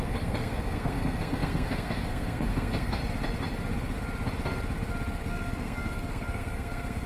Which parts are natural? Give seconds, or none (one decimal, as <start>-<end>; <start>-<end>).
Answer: 3.0-5.3